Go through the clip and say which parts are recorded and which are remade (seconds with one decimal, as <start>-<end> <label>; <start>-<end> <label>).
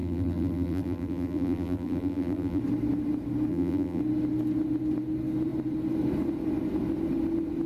0.0-2.6 remade; 2.6-3.5 recorded; 3.5-4.0 remade; 4.0-7.7 recorded